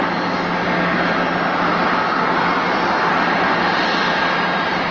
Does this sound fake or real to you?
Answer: real